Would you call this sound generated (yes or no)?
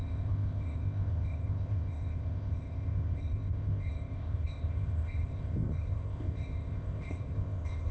yes